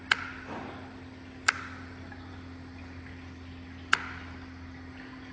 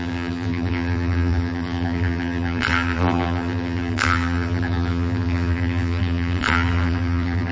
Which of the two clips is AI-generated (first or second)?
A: second